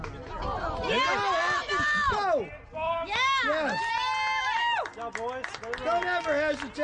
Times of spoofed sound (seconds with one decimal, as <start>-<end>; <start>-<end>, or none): none